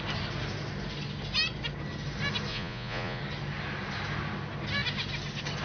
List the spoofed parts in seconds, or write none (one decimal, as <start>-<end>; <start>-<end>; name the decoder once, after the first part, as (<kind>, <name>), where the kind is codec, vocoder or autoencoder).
2.5-3.2 (vocoder, Vocos)